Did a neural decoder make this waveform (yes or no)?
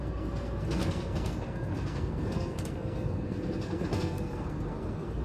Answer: yes